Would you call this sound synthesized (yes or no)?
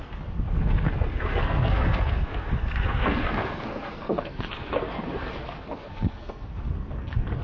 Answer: yes